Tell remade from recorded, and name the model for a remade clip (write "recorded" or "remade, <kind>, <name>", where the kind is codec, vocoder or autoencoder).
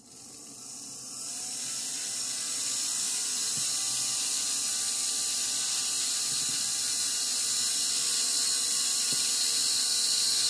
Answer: recorded